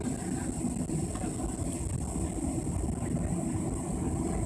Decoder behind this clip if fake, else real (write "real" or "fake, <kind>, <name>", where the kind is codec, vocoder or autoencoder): real